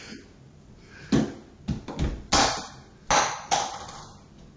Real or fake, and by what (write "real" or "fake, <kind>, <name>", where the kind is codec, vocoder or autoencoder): real